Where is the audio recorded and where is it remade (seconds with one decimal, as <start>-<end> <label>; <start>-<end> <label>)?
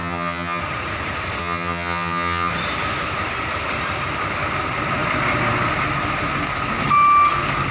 0.0-0.6 remade; 0.6-1.4 recorded; 1.4-2.5 remade; 2.5-7.7 recorded